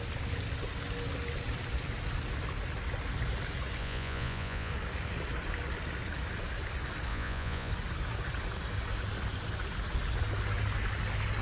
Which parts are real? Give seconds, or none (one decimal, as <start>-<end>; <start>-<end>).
0.0-3.8; 4.7-7.1; 7.7-11.4